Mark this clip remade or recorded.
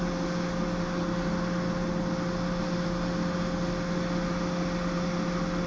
recorded